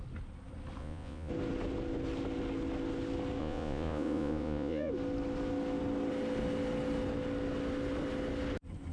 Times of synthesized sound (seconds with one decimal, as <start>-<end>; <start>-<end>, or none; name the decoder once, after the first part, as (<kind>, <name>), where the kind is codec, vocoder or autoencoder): 0.8-1.3 (vocoder, Vocos); 3.4-4.9